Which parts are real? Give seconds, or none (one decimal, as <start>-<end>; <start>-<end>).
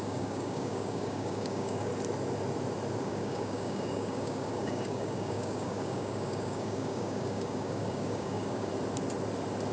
1.9-3.0; 8.7-9.7